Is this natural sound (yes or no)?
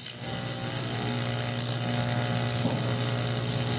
yes